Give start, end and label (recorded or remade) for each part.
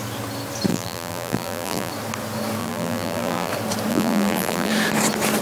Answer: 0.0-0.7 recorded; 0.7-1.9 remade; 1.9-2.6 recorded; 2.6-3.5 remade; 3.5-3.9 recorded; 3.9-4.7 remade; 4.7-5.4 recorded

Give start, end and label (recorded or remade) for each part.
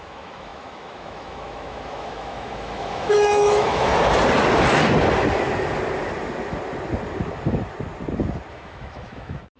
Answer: 0.0-3.9 remade; 3.9-8.5 recorded; 8.5-9.6 remade